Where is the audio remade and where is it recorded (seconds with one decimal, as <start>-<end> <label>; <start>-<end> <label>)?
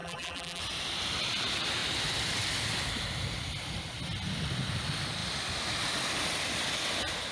0.0-0.6 remade; 0.6-7.3 recorded